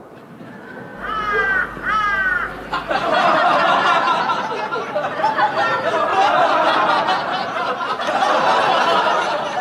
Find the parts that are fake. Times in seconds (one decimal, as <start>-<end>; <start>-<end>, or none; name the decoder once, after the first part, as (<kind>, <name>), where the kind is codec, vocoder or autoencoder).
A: none